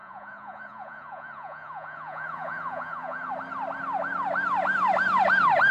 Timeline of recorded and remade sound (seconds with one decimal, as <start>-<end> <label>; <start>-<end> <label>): 0.0-3.3 remade; 3.3-5.7 recorded